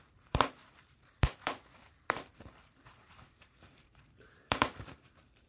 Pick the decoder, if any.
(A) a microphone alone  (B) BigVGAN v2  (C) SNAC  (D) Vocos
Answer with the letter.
B